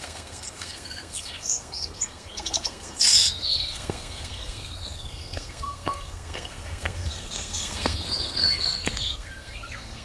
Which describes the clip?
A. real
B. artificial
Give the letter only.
B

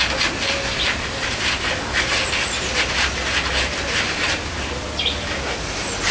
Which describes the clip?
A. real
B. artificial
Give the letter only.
A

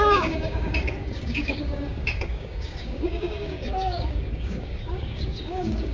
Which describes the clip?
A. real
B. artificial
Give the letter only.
B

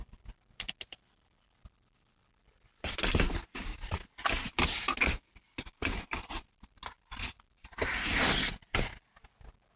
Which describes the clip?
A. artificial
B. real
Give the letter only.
B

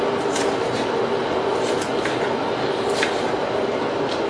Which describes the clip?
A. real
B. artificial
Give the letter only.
A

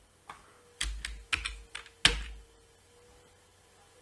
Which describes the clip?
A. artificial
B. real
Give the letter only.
B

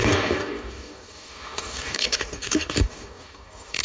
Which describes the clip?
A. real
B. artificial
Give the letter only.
B